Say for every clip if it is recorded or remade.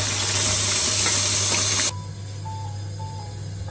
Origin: recorded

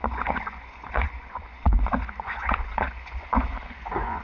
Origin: remade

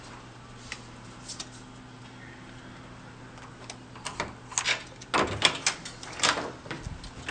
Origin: recorded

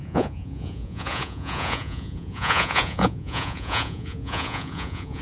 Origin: remade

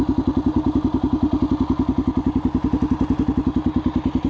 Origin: recorded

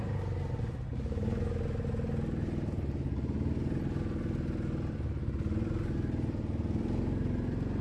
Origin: recorded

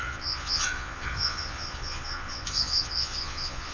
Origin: remade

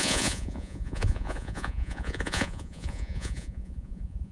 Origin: remade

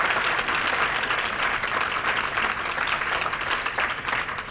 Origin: recorded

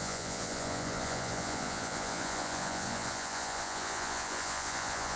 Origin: remade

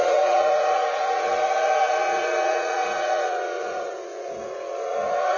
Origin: remade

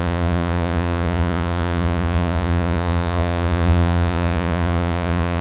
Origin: remade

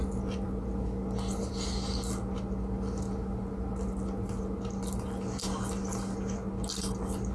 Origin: recorded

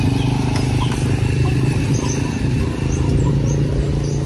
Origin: recorded